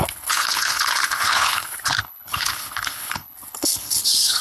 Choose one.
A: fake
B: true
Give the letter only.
A